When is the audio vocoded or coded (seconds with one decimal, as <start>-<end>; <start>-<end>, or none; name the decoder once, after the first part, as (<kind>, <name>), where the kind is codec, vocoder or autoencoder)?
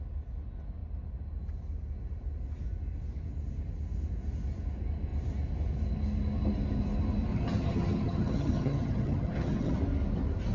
7.3-9.8 (vocoder, HiFi-GAN)